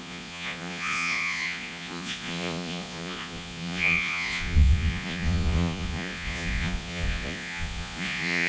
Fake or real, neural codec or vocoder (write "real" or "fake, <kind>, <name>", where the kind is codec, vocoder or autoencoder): fake, vocoder, Vocos